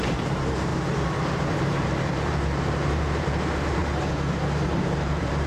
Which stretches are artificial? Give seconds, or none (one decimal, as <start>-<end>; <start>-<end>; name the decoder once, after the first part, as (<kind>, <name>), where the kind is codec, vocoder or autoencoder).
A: 0.0-0.7 (vocoder, BigVGAN v2); 1.6-3.8; 4.6-5.5

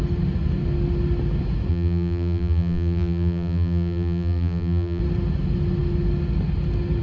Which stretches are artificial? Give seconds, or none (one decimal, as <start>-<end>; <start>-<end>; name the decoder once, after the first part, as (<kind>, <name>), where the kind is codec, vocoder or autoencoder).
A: 1.7-5.0 (vocoder, BigVGAN v2)